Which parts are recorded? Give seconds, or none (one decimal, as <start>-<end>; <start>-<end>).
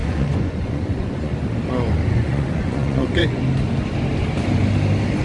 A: 1.3-2.1; 3.4-5.2